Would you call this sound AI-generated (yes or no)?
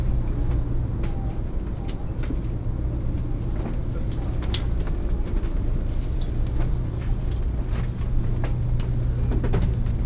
no